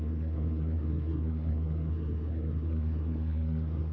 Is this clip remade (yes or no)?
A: yes